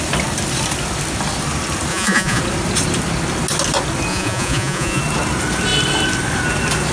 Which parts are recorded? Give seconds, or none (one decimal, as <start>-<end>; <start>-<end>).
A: 0.0-1.9; 2.4-4.1; 5.0-6.9